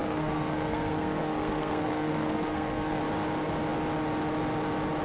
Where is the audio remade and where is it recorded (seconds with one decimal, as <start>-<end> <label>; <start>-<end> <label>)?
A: 0.0-3.0 remade; 3.0-5.0 recorded